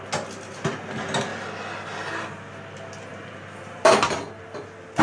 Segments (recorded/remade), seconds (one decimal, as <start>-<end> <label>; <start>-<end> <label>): 0.0-3.1 recorded; 3.1-4.1 remade; 4.1-5.0 recorded